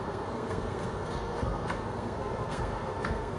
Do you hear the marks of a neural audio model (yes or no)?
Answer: yes